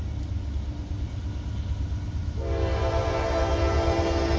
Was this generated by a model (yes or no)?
no